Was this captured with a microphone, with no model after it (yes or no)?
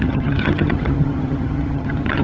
no